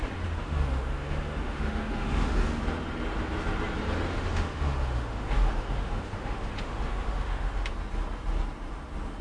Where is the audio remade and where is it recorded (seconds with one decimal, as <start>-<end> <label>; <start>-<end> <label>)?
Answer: 0.0-0.4 recorded; 0.4-2.6 remade; 2.6-4.1 recorded; 4.1-7.7 remade; 7.7-9.2 recorded